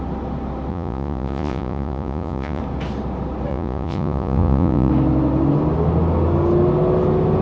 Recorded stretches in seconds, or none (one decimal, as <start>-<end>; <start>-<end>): 0.0-0.7; 2.6-3.5; 4.9-7.4